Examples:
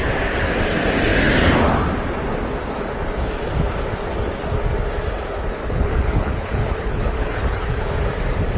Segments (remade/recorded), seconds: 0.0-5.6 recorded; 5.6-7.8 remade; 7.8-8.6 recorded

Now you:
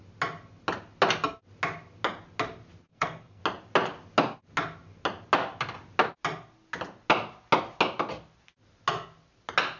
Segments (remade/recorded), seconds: 0.0-2.9 recorded; 2.9-3.4 remade; 3.4-9.8 recorded

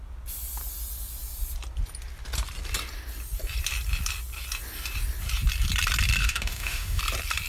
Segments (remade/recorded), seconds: 0.0-6.2 recorded; 6.2-7.0 remade; 7.0-7.5 recorded

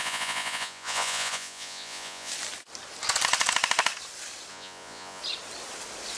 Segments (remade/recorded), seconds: 0.0-2.3 remade; 2.3-4.5 recorded; 4.5-5.2 remade; 5.2-6.2 recorded

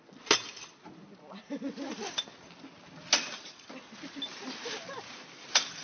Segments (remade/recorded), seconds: 0.0-5.8 recorded

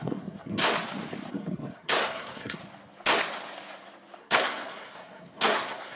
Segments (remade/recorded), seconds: 0.0-0.6 remade; 0.6-1.3 recorded; 1.3-2.6 remade; 2.6-4.2 recorded; 4.2-6.0 remade

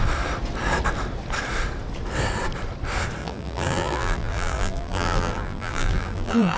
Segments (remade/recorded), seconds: 0.0-3.2 recorded; 3.2-6.6 remade